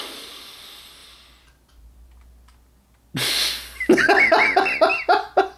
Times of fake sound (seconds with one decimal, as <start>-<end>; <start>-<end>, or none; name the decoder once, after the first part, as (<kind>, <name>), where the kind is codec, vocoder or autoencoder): none